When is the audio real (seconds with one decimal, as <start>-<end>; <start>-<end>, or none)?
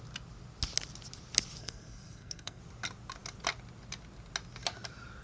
0.0-1.6; 2.6-5.2